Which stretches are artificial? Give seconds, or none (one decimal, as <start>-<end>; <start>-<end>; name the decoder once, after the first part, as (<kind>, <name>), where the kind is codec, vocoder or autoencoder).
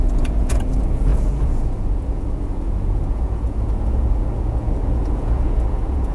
0.0-6.1 (vocoder, Vocos)